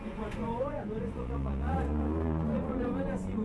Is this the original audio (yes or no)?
no